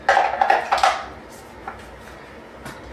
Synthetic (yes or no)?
no